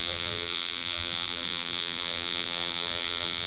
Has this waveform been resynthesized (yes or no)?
yes